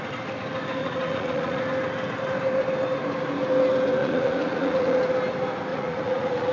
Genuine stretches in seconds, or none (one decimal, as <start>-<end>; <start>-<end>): 0.0-0.8; 1.6-4.0; 5.0-5.7